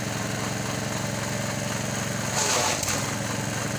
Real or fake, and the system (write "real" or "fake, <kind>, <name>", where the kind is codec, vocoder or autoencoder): real